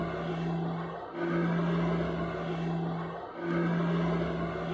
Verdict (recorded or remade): recorded